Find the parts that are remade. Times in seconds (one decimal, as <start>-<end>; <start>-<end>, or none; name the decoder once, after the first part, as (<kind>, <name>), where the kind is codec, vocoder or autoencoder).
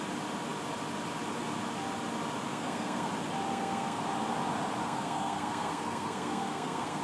2.5-3.1 (codec, SNAC); 3.5-4.0; 4.8-7.0